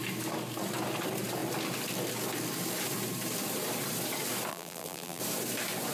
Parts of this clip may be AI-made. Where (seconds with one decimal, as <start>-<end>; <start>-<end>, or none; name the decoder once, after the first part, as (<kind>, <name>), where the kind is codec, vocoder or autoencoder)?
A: 4.5-5.2 (vocoder, BigVGAN v2)